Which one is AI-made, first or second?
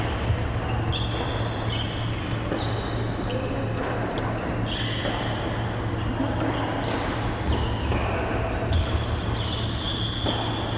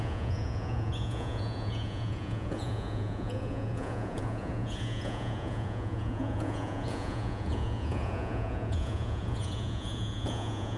second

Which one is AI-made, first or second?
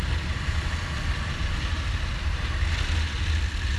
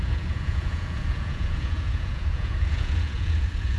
second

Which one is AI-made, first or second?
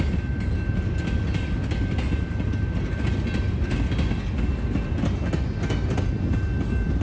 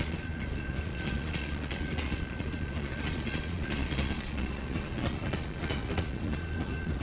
second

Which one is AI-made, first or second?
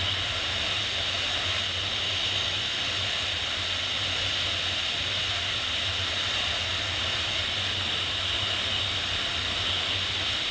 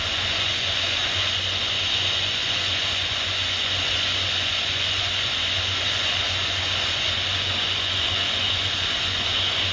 second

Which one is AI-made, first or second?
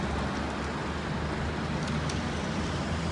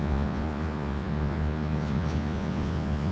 second